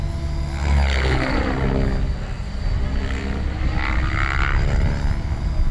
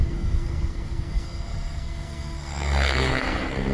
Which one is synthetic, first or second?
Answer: second